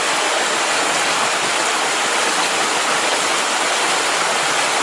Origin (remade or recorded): recorded